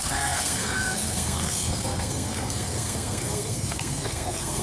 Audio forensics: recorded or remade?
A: remade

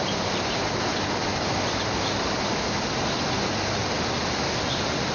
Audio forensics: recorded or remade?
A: recorded